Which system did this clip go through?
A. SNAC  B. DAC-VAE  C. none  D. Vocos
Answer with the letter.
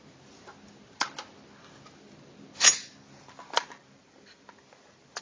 C